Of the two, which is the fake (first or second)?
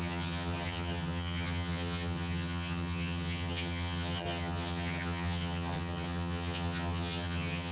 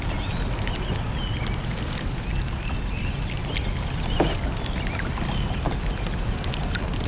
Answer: first